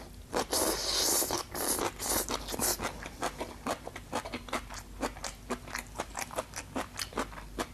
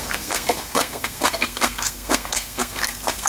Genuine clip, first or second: first